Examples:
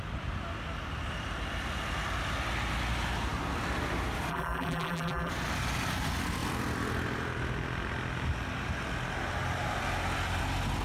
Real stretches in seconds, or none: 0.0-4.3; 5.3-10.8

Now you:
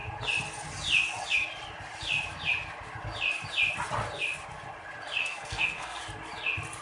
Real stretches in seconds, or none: 0.0-5.2; 6.0-6.8

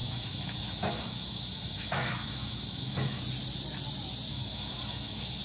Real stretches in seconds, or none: 3.2-4.3

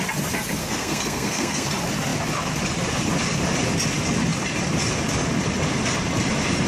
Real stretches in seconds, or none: 0.0-0.6; 1.7-6.7

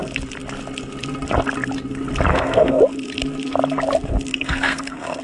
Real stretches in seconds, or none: 0.0-2.3; 2.8-4.3

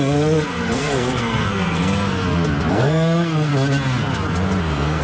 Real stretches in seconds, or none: 2.2-2.7; 3.5-4.6

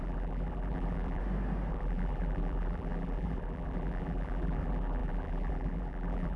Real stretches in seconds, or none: 1.2-1.7

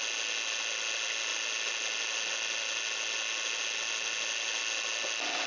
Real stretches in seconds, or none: 0.0-5.5